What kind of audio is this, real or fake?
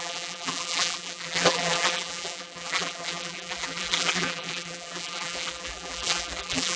fake